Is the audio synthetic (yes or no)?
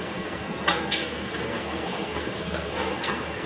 yes